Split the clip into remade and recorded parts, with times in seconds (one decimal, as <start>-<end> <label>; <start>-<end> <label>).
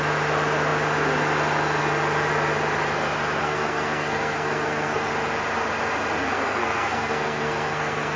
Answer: 0.0-3.4 recorded; 3.4-5.1 remade; 5.1-6.2 recorded; 6.2-8.2 remade